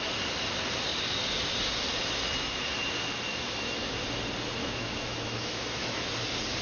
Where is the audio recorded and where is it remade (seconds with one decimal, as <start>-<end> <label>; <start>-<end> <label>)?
0.0-3.3 recorded; 3.3-3.9 remade; 3.9-4.6 recorded; 4.6-6.1 remade; 6.1-6.6 recorded